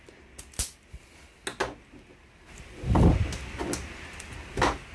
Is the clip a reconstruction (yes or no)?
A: no